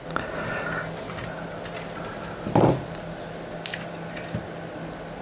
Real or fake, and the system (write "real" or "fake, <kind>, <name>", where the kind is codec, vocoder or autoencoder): real